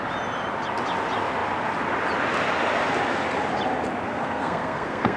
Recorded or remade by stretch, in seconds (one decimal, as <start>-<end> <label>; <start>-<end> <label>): 0.0-4.1 recorded; 4.1-5.2 remade